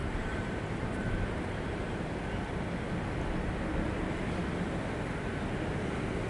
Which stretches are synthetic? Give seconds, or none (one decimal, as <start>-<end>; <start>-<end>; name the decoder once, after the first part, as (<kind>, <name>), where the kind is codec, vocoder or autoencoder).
0.0-1.9 (vocoder, BigVGAN v2)